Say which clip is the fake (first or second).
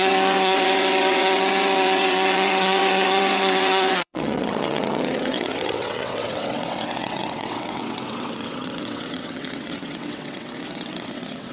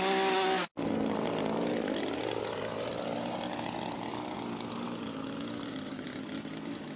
first